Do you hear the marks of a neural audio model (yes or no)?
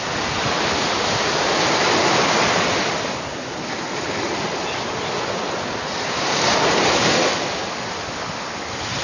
no